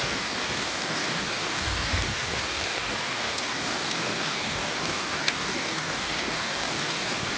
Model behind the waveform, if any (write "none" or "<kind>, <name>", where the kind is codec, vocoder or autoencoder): codec, DAC